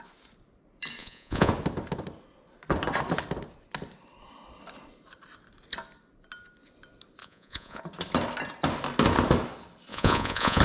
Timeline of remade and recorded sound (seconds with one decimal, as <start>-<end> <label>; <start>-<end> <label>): 0.0-1.0 recorded; 1.0-1.5 remade; 1.5-7.2 recorded; 7.2-7.8 remade; 7.8-9.9 recorded; 9.9-10.6 remade